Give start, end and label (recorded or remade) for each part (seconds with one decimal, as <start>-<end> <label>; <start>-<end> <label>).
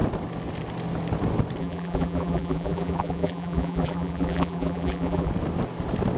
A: 0.0-1.6 recorded; 1.6-5.3 remade; 5.3-6.2 recorded